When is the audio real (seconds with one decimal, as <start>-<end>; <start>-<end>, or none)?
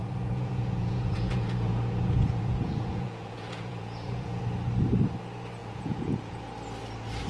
4.4-5.6; 6.5-7.3